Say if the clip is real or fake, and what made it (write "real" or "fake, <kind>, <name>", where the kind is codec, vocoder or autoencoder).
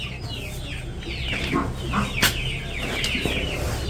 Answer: real